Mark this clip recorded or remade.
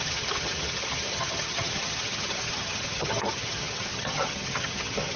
remade